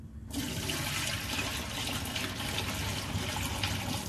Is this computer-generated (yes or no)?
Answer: no